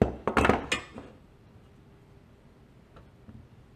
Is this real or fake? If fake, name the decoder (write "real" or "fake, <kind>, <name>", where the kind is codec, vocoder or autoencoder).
real